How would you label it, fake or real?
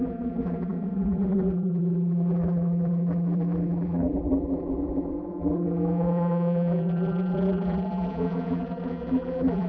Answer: fake